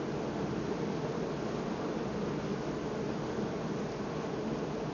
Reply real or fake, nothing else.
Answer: real